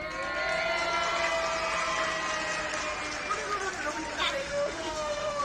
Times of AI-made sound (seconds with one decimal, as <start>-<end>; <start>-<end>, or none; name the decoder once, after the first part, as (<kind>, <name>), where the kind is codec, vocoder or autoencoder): 4.4-5.4 (autoencoder, DAC-VAE)